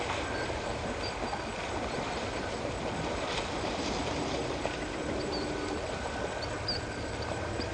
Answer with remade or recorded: recorded